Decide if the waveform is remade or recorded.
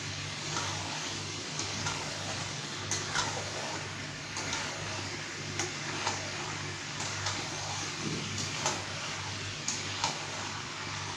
remade